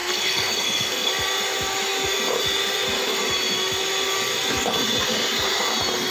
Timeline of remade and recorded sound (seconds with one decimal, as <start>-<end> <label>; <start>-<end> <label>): 0.0-1.1 remade; 1.1-6.1 recorded